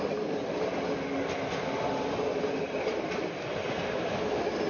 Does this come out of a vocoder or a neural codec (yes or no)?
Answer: no